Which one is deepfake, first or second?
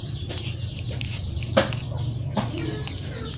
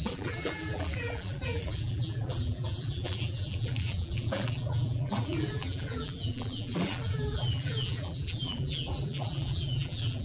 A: second